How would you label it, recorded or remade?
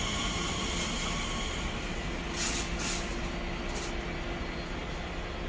recorded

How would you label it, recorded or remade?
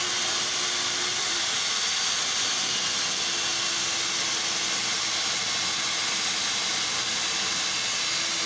recorded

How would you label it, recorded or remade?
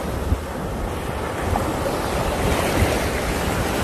recorded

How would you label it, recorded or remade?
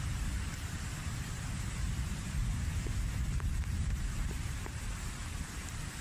remade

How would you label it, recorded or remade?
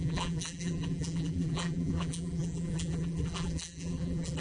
remade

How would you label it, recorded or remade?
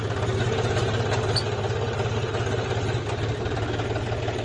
recorded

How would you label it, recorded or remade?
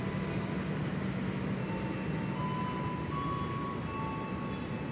recorded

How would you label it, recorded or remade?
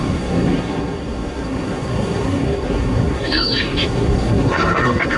remade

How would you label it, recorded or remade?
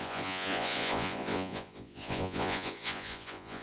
remade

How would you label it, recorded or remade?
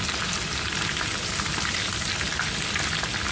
recorded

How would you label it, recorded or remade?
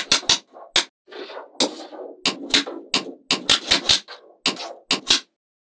recorded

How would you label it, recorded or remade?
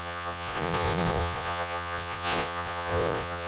remade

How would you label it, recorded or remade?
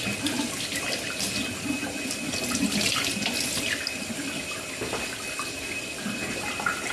recorded